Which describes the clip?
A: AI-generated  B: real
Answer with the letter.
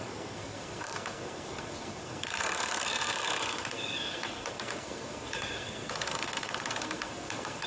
A